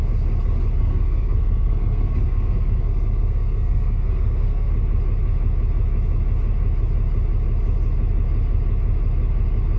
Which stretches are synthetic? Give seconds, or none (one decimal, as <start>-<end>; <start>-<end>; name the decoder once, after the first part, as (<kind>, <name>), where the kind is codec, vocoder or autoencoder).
0.8-4.7 (codec, SNAC)